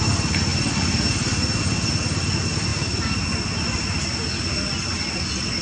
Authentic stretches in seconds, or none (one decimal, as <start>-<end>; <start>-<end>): 0.0-5.6